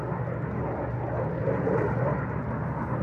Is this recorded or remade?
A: recorded